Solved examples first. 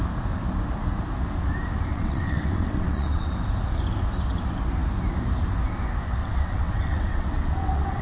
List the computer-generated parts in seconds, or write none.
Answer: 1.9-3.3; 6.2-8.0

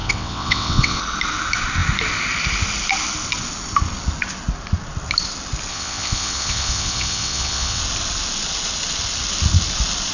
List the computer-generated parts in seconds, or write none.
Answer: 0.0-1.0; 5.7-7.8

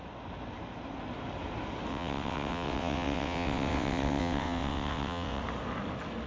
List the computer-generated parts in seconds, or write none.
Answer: 1.9-5.4